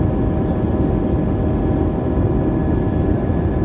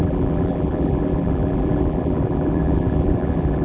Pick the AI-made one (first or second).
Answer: second